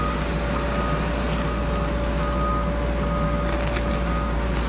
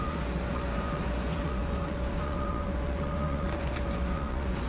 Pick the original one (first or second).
first